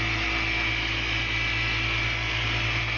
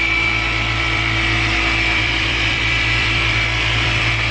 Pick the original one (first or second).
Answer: first